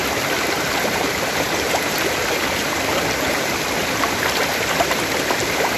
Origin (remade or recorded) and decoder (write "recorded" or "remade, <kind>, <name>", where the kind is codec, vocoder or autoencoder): recorded